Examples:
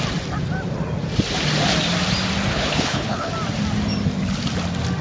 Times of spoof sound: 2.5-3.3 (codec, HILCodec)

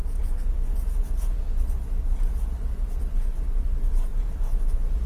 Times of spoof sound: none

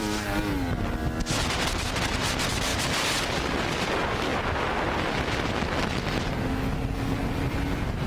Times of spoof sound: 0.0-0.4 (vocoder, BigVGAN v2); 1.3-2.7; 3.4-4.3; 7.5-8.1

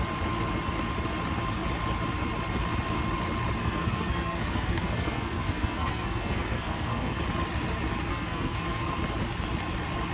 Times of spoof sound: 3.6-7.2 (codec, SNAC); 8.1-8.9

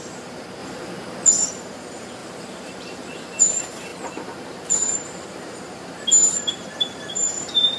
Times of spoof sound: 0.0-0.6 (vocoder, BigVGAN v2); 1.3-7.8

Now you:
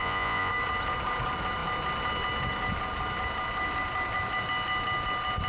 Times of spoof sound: 0.0-0.5 (vocoder, Vocos)

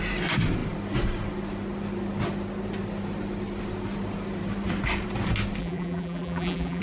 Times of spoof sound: 5.6-6.8 (vocoder, BigVGAN v2)